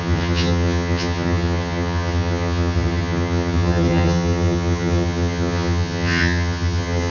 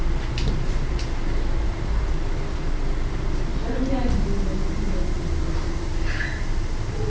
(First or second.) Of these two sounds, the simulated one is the first